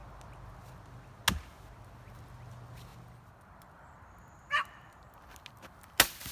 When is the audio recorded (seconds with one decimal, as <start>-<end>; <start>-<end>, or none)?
0.0-6.3